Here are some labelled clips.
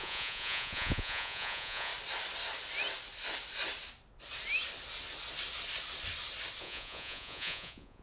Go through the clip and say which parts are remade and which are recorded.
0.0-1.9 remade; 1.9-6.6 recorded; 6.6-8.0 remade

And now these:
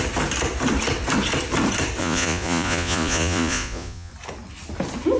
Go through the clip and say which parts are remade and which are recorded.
0.0-2.0 recorded; 2.0-4.1 remade; 4.1-5.2 recorded

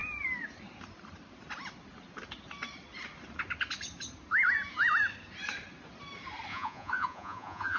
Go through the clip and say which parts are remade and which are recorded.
0.0-6.5 recorded; 6.5-7.8 remade

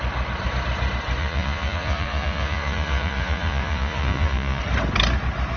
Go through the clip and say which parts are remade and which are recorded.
0.0-1.2 recorded; 1.2-4.6 remade; 4.6-5.6 recorded

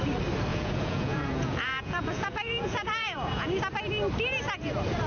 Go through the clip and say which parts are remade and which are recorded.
0.0-0.5 recorded; 0.5-3.6 remade; 3.6-5.1 recorded

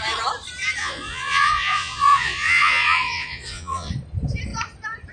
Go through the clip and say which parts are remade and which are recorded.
0.0-0.8 recorded; 0.8-3.9 remade; 3.9-5.1 recorded